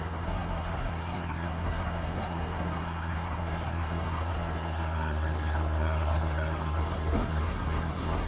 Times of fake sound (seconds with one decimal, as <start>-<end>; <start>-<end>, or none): 0.0-8.3